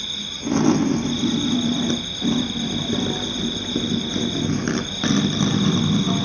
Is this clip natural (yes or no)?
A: yes